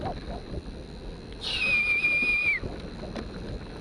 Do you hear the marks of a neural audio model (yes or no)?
no